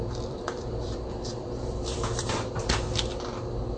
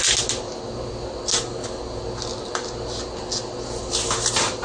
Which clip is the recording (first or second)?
second